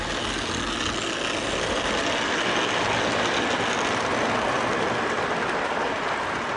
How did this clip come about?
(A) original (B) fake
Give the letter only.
A